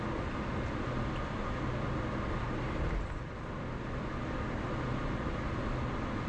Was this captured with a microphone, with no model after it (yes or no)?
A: yes